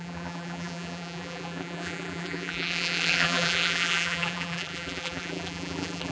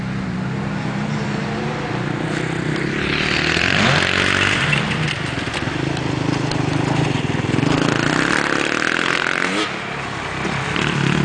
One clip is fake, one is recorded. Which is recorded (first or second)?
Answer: second